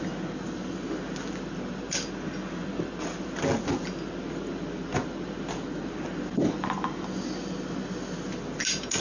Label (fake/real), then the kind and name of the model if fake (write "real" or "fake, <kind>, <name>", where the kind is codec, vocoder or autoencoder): real